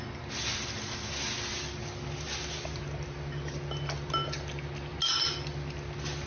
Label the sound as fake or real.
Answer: real